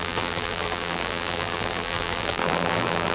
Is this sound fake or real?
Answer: fake